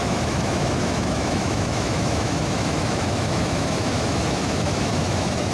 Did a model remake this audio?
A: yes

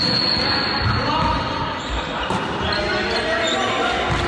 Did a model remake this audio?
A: no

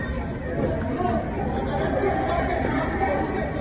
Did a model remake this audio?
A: no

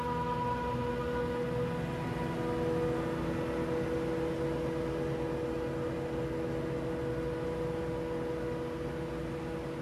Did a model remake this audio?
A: no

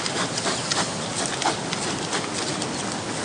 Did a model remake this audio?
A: no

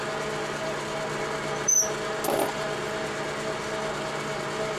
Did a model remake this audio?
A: no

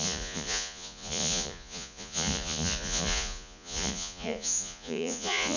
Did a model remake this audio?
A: yes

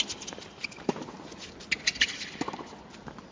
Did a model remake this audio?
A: no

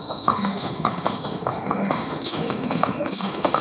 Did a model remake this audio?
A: yes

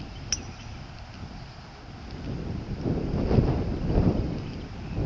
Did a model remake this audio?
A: no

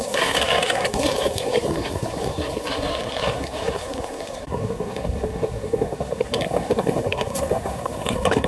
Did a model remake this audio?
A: yes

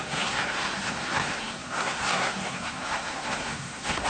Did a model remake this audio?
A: yes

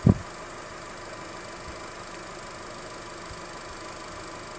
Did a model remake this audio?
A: no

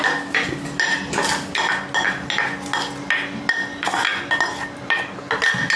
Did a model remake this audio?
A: no